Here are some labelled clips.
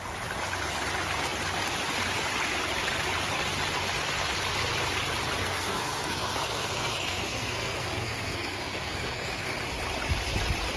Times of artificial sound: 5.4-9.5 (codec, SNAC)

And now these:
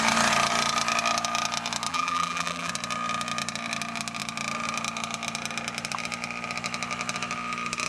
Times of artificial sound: 1.9-2.7 (vocoder, BigVGAN v2)

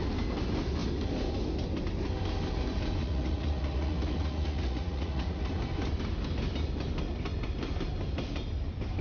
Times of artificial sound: 3.0-5.5 (vocoder, Vocos)

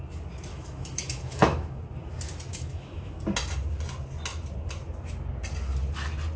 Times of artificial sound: 0.5-1.8 (autoencoder, DAC-VAE); 2.5-3.2

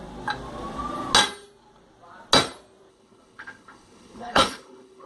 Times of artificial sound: 2.9-5.1 (codec, HILCodec)